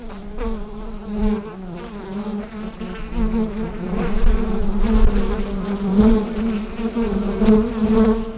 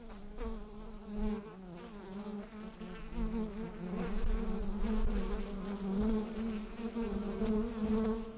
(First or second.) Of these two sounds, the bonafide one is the second